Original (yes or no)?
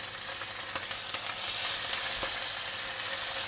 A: yes